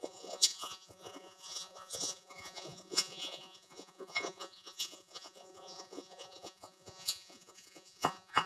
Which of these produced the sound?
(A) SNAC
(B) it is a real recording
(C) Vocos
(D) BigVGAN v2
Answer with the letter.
C